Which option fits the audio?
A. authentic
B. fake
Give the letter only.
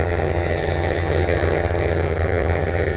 B